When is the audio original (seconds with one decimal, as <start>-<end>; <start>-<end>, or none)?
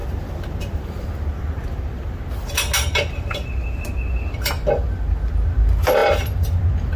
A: 2.1-6.0; 6.6-7.0